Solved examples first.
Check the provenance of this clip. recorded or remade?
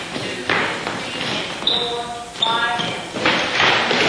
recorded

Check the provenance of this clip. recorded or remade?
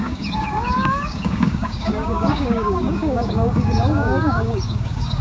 remade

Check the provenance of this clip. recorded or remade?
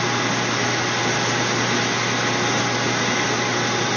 recorded